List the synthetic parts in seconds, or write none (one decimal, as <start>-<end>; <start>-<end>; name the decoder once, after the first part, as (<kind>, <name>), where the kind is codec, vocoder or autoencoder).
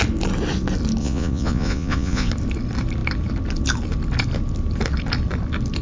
1.0-2.3 (vocoder, Vocos)